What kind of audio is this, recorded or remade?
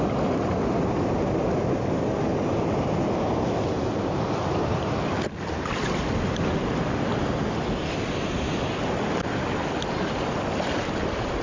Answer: recorded